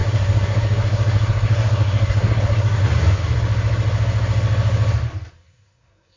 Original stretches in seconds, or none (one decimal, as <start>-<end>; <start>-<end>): 2.8-5.3